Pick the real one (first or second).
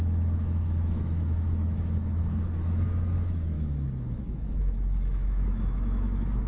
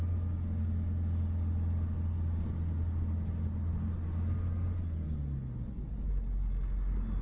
second